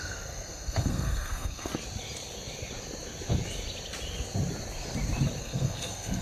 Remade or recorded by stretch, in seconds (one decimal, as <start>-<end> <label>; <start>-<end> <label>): 0.0-1.7 remade; 1.7-5.4 recorded; 5.4-6.2 remade